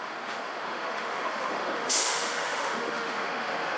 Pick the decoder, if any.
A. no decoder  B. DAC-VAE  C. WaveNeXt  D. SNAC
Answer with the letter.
B